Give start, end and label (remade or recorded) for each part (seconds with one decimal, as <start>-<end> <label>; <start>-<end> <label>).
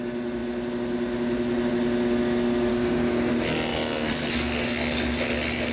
0.0-2.7 recorded; 2.7-3.3 remade; 3.3-5.7 recorded